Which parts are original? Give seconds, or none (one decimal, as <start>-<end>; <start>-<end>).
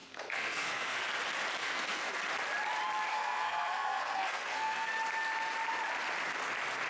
1.0-1.6; 2.2-3.1; 4.9-6.9